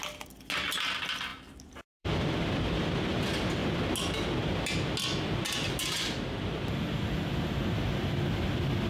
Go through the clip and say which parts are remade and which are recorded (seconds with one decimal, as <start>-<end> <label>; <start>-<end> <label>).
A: 0.0-1.3 recorded; 1.3-3.0 remade; 3.0-8.9 recorded